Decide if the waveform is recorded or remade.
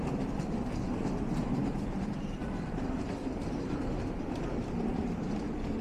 remade